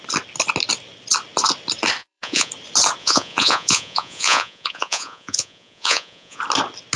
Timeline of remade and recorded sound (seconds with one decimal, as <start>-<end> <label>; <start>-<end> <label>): 0.0-2.0 recorded; 2.0-2.5 remade; 2.5-3.0 recorded; 3.0-6.4 remade; 6.4-7.0 recorded